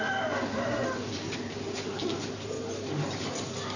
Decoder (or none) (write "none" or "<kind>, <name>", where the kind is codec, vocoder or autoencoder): none